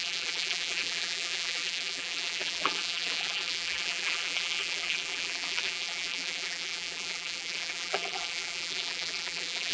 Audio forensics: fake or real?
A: fake